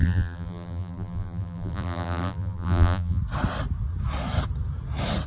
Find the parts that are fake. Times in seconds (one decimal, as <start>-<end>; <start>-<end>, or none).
0.0-3.2